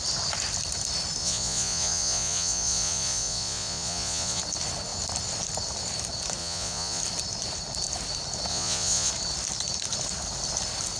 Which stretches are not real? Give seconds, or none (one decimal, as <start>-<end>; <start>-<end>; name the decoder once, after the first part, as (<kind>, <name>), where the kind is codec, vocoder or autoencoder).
1.2-4.4 (vocoder, Vocos); 6.4-7.0; 8.5-9.1